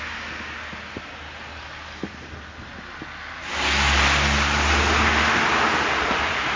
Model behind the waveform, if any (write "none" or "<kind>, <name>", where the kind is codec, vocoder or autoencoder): none